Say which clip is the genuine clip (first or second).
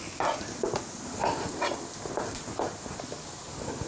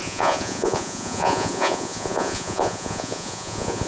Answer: first